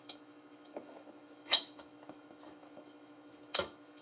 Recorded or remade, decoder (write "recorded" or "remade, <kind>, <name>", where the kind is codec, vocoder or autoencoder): remade, autoencoder, DAC-VAE